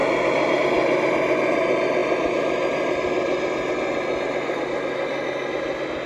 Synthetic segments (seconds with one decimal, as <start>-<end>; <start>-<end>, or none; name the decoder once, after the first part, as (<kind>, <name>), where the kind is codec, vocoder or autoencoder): none